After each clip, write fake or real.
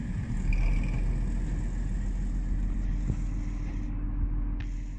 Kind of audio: real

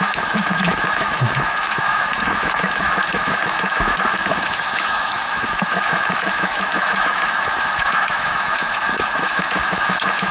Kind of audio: fake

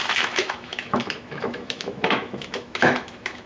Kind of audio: fake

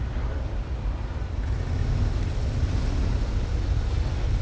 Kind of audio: real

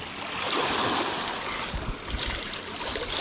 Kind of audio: real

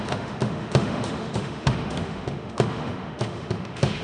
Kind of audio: fake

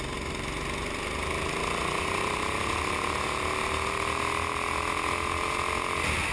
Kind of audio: real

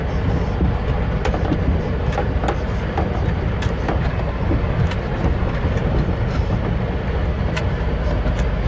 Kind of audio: real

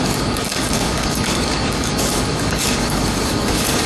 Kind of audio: fake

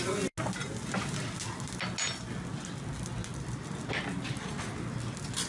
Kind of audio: real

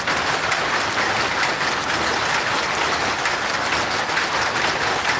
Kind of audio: real